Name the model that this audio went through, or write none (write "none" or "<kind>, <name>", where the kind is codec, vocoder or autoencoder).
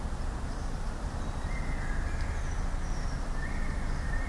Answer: none